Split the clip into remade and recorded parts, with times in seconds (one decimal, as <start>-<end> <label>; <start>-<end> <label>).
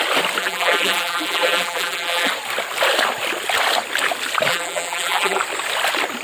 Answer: 0.0-0.4 recorded; 0.4-2.3 remade; 2.3-4.5 recorded; 4.5-5.4 remade; 5.4-6.2 recorded